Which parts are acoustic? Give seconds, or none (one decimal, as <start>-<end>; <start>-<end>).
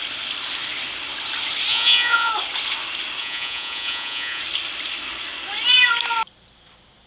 0.0-1.7; 2.3-3.2; 4.4-7.1